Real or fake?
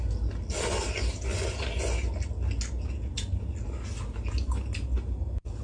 real